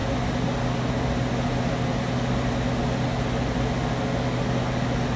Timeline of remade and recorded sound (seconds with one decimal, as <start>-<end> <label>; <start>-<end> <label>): 0.0-5.2 recorded